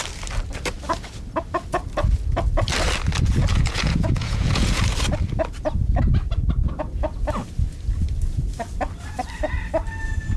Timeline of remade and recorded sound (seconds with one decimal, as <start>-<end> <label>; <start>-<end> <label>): 0.0-3.5 recorded; 3.5-4.8 remade; 4.8-10.4 recorded